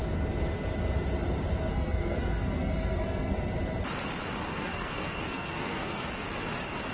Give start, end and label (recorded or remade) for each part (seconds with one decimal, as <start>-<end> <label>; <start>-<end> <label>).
0.0-1.7 recorded; 1.7-3.3 remade; 3.3-4.5 recorded; 4.5-6.1 remade; 6.1-6.9 recorded